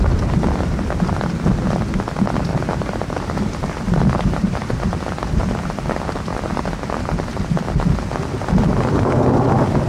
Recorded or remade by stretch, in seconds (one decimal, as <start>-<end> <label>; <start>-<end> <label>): 0.0-2.5 recorded; 2.5-4.8 remade; 4.8-9.9 recorded